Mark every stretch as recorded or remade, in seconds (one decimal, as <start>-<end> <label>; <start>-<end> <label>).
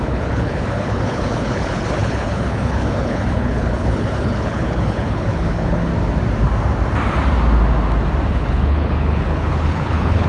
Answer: 0.0-5.9 remade; 5.9-8.3 recorded; 8.3-10.3 remade